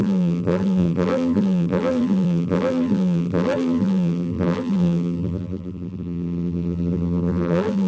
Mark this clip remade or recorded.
remade